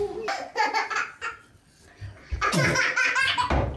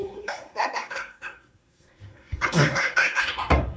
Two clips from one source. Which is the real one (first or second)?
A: first